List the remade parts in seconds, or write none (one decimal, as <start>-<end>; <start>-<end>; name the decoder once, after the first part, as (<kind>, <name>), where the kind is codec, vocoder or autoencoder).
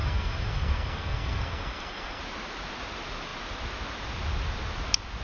0.0-2.2 (codec, SNAC)